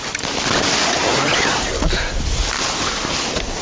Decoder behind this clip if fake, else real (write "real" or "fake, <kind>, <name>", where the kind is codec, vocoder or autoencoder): real